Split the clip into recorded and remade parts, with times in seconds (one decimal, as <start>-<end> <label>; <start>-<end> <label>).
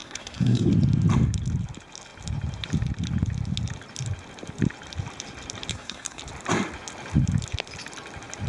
0.0-0.7 remade; 0.7-5.7 recorded; 5.7-6.2 remade; 6.2-8.5 recorded